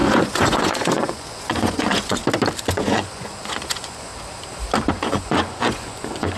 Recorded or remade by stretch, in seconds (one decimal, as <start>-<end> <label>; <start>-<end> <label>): 0.0-2.2 remade; 2.2-2.7 recorded; 2.7-4.1 remade; 4.1-4.9 recorded; 4.9-6.4 remade